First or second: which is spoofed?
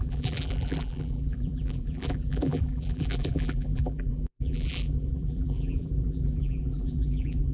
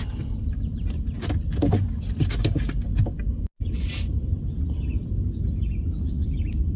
first